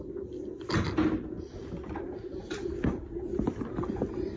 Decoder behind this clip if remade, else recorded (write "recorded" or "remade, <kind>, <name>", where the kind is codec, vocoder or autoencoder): recorded